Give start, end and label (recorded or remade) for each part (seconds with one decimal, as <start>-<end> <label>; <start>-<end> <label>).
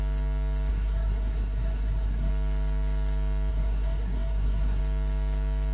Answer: 0.0-0.7 recorded; 0.7-2.3 remade; 2.3-3.5 recorded; 3.5-4.8 remade; 4.8-5.7 recorded